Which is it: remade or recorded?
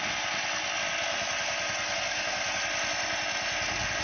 recorded